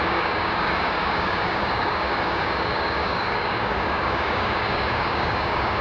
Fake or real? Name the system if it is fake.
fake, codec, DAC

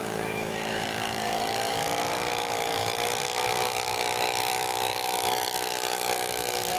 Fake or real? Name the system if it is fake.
fake, codec, DAC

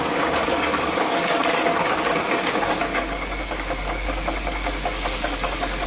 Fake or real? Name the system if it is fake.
fake, codec, DAC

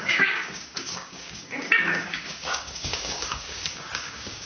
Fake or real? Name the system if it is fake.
fake, codec, DAC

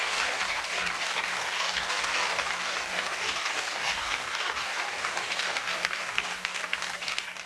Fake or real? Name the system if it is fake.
fake, codec, DAC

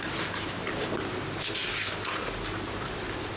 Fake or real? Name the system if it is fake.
real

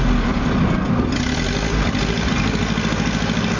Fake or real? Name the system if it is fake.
real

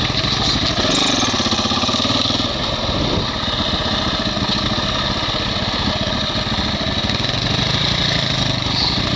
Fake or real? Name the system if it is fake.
real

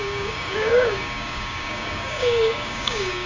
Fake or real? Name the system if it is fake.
fake, codec, DAC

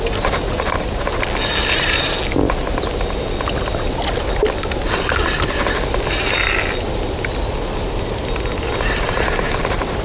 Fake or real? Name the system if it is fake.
real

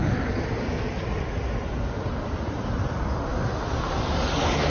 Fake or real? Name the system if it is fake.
real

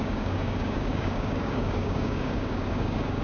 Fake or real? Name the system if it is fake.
fake, codec, DAC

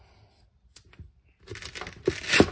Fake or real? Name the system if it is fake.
real